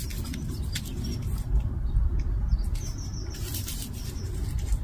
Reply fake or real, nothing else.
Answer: real